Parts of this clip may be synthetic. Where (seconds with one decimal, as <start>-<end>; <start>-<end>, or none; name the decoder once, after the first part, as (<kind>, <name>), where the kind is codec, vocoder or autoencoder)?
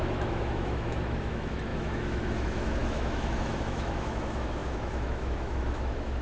0.0-6.2 (autoencoder, DAC-VAE)